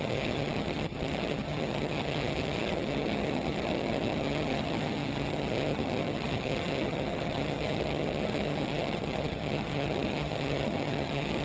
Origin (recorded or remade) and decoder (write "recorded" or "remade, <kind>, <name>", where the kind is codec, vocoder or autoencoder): remade, vocoder, HiFi-GAN